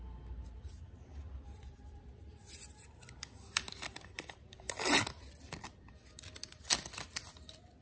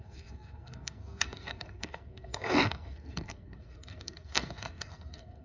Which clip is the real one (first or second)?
first